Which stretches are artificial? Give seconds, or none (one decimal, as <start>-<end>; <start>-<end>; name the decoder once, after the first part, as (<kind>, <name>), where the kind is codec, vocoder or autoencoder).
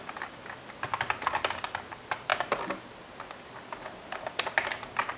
none